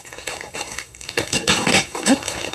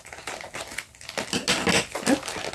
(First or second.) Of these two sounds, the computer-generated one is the first